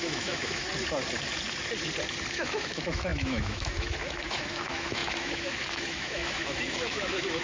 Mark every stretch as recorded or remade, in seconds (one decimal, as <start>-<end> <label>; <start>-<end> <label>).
0.0-0.7 remade; 0.7-2.3 recorded; 2.3-7.4 remade